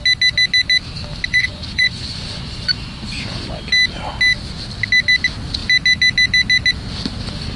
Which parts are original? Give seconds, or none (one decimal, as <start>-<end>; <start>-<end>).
0.0-1.3; 3.6-7.6